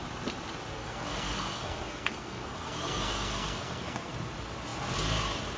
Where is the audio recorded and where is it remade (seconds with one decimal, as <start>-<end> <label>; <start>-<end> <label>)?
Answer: 0.0-0.7 recorded; 0.7-4.1 remade; 4.1-5.6 recorded